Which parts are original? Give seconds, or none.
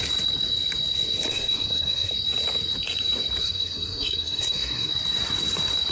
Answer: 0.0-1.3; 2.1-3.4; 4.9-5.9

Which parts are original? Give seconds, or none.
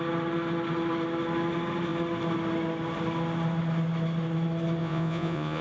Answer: 0.0-4.8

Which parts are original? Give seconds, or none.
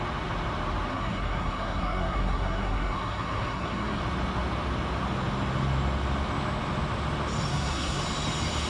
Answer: 0.0-0.9; 4.0-7.5; 8.0-8.7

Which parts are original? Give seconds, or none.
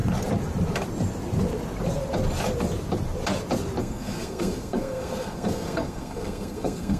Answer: 0.0-3.8